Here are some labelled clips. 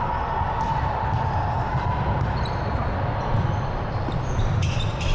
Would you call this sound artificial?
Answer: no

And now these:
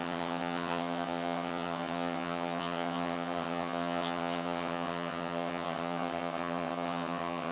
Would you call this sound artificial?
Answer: yes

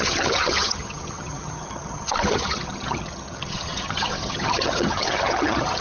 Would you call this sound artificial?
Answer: yes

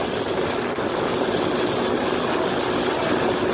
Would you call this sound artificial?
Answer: no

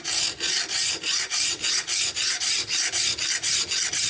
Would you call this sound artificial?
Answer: no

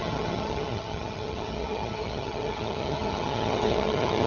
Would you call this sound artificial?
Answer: yes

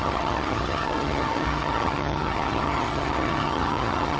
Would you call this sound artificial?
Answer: yes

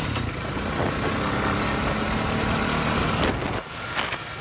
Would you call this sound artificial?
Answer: no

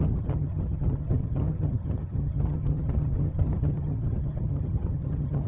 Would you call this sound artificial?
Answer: yes